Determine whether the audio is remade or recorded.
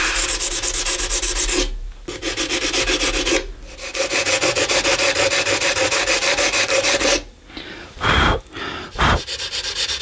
recorded